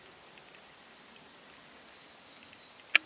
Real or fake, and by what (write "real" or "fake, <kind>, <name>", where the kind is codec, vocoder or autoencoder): real